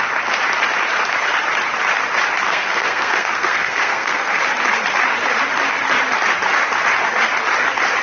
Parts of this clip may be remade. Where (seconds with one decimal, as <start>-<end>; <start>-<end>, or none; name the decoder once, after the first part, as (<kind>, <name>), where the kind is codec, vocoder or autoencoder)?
2.5-4.4 (codec, SNAC)